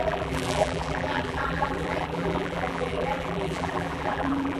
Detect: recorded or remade remade